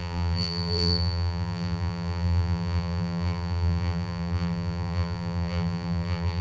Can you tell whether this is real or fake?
fake